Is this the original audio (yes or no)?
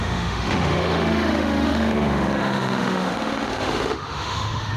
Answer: no